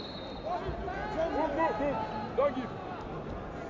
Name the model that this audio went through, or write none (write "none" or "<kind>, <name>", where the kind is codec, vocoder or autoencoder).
none